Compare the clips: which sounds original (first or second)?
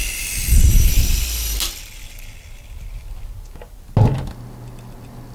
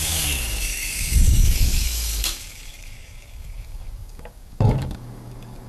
first